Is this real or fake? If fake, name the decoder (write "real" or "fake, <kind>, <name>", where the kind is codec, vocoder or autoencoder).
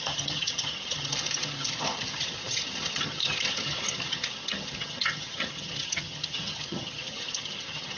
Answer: fake, vocoder, HiFi-GAN